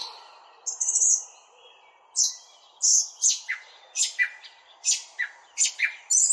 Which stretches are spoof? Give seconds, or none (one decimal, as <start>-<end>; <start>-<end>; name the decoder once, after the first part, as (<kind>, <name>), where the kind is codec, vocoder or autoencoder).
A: none